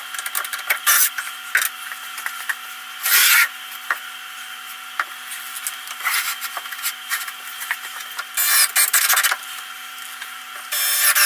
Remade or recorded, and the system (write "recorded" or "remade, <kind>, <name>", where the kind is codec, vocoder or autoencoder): recorded